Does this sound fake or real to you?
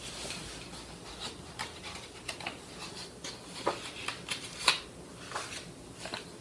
real